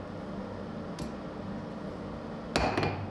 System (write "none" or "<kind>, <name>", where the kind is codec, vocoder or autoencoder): none